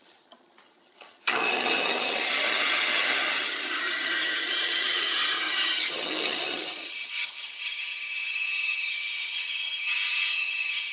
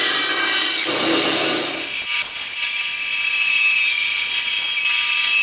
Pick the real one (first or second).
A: second